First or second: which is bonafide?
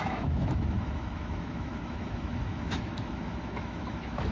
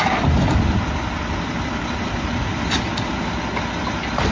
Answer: second